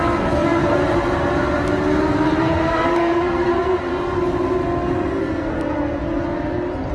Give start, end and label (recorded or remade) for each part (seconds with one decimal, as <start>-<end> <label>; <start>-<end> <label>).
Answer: 0.0-0.8 remade; 0.8-2.4 recorded; 2.4-3.9 remade; 3.9-5.2 recorded; 5.2-6.0 remade; 6.0-6.9 recorded